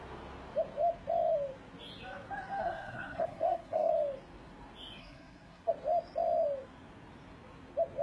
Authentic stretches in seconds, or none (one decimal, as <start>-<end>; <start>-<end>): 0.0-2.6; 3.9-5.0; 5.7-8.0